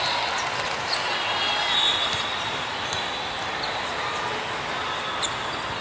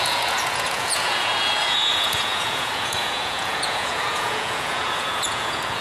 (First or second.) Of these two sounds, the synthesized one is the second